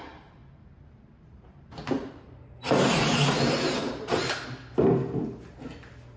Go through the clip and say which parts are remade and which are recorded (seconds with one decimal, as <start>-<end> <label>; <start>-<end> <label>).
0.0-4.1 remade; 4.1-6.2 recorded